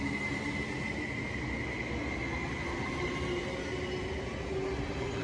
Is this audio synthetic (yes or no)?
no